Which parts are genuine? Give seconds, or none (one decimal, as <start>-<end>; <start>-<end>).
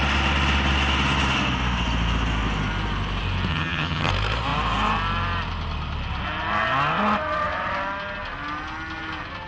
0.0-3.5; 4.1-9.5